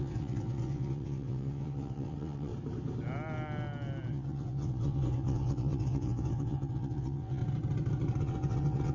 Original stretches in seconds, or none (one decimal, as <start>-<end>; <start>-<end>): 2.5-4.1; 7.4-8.2